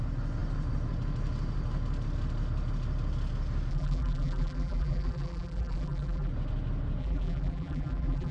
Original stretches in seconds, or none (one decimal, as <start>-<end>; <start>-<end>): 0.0-3.7; 6.3-7.0